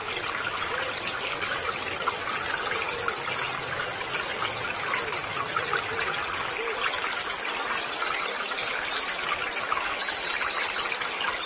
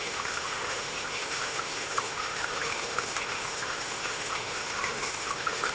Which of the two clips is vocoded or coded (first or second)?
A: second